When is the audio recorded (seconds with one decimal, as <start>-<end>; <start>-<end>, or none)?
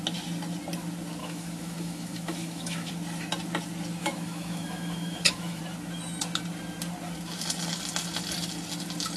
0.0-1.2; 2.9-4.0; 5.6-9.2